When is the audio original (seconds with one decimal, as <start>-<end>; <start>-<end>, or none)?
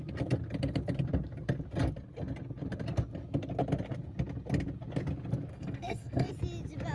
0.0-5.5; 6.3-6.9